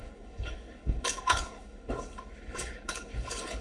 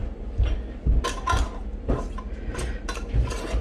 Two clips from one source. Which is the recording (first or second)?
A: second